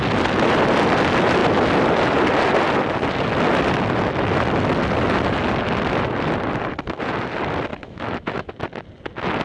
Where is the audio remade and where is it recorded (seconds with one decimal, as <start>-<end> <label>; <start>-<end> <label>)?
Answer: 0.0-7.7 recorded; 7.7-8.5 remade; 8.5-9.4 recorded